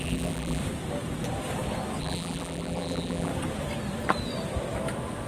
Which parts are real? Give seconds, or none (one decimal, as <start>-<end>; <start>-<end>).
0.6-2.0; 3.3-5.3